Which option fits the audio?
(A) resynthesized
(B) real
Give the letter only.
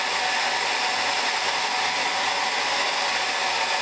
B